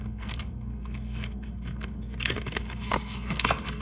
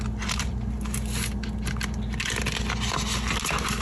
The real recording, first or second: second